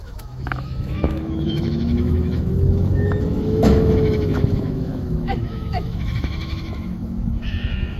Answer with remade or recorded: remade